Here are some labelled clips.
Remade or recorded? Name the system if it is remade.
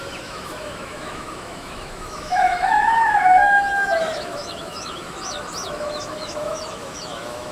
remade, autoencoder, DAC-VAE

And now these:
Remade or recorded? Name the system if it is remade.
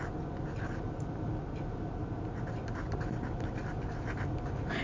recorded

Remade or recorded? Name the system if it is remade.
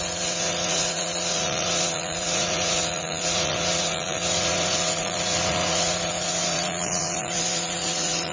remade, vocoder, Vocos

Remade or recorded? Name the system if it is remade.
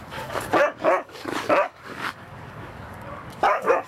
remade, codec, DAC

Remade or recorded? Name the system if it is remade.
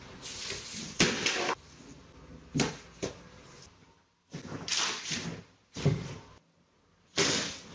recorded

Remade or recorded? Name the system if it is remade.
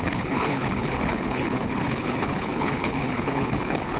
remade, codec, HILCodec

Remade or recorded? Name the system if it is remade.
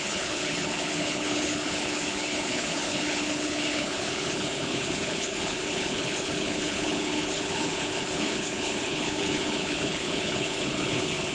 remade, codec, HILCodec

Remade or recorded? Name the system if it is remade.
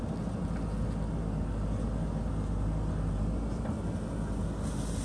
recorded